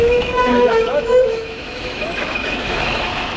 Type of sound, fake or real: fake